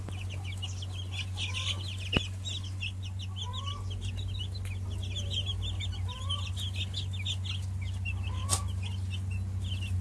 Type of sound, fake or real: real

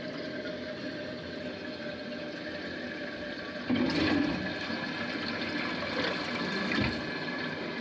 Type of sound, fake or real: real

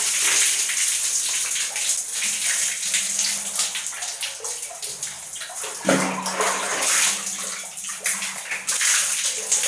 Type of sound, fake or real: real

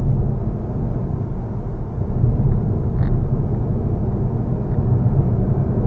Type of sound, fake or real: real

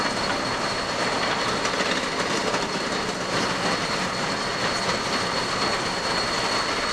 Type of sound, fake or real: real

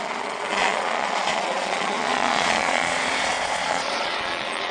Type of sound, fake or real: fake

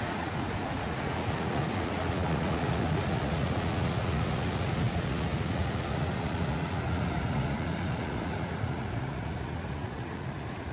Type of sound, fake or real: fake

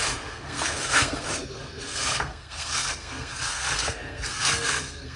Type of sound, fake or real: fake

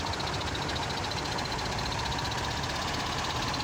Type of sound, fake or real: real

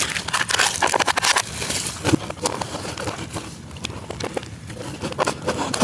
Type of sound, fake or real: real